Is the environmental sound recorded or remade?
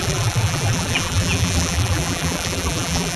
remade